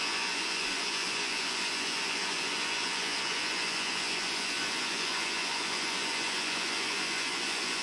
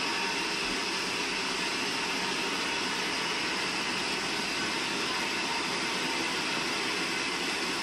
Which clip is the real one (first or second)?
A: second